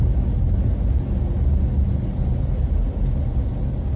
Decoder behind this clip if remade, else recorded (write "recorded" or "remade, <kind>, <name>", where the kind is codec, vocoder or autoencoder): recorded